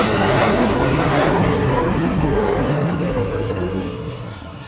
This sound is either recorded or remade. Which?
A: remade